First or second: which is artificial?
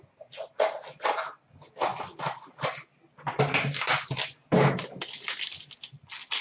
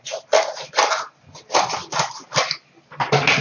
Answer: second